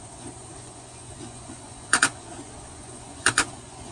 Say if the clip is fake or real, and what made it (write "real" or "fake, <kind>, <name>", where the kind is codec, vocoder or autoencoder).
fake, vocoder, Vocos